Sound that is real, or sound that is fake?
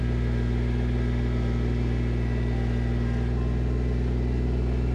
real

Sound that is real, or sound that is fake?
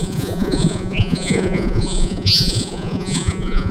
fake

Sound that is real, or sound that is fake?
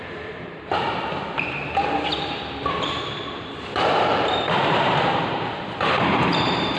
fake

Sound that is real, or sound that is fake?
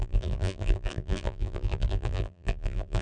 fake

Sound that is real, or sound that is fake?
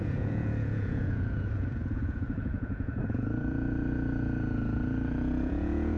fake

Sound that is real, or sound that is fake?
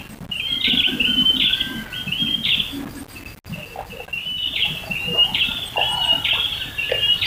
real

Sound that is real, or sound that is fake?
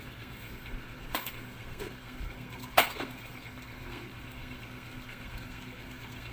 fake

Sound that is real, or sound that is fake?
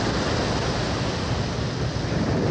real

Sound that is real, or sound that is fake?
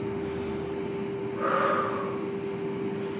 real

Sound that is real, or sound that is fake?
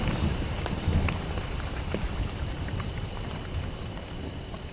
fake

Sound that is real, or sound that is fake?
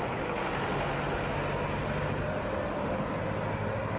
real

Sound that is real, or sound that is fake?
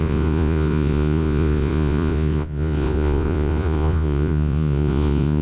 fake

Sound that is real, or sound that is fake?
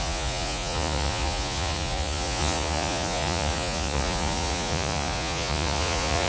fake